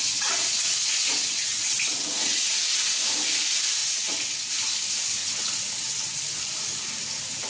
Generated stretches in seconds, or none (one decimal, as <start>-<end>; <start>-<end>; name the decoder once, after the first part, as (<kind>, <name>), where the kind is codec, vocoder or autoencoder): 0.0-2.5 (vocoder, WaveNeXt); 3.8-4.5; 5.2-6.2